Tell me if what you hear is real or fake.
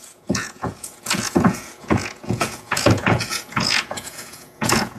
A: fake